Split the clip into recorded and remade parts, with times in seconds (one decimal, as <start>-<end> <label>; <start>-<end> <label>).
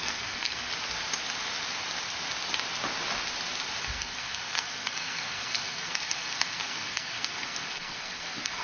0.0-0.7 remade; 0.7-3.8 recorded; 3.8-8.6 remade